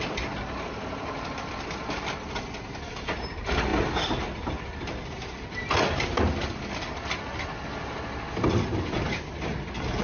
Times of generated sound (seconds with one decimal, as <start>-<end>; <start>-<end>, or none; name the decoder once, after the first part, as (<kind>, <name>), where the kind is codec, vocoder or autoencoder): none